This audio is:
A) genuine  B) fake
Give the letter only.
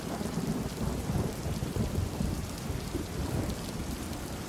B